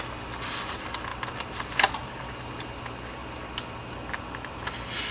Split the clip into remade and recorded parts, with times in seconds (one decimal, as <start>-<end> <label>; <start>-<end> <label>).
0.0-5.1 recorded